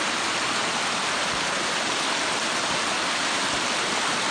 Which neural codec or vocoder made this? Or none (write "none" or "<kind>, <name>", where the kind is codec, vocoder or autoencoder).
none